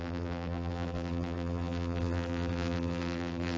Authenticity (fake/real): fake